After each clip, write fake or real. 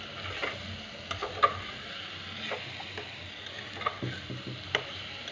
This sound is real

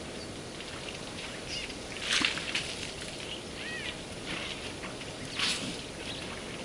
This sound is real